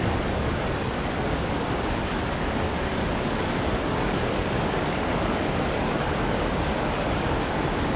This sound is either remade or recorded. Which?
remade